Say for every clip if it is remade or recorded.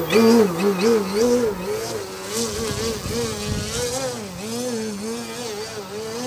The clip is recorded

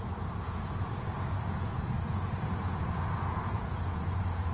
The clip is remade